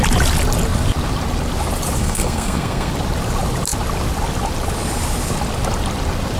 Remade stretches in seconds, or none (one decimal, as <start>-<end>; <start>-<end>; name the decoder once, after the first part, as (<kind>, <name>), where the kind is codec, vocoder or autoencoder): 2.0-2.9 (codec, SNAC)